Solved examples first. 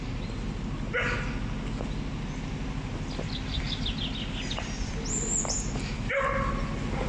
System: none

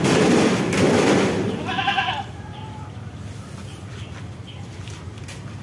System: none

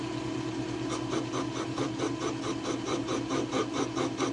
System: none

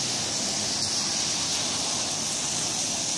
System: none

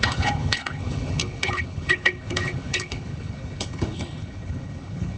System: codec, HILCodec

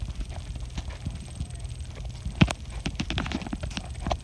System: none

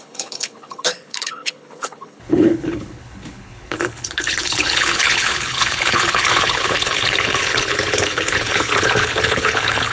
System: codec, HILCodec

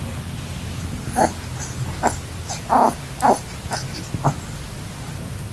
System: none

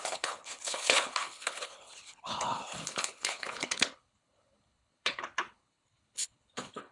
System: codec, HILCodec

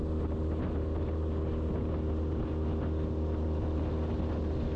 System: none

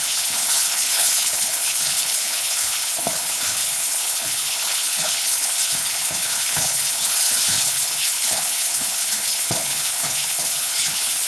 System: codec, HILCodec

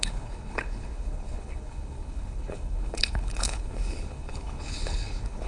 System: codec, HILCodec